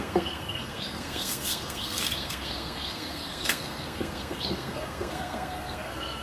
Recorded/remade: remade